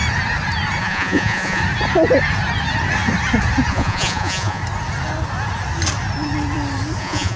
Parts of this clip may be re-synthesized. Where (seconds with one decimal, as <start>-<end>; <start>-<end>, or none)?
0.8-1.6; 3.7-4.6; 7.0-7.4